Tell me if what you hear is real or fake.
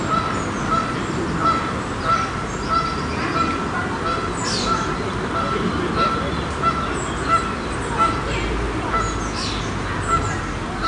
real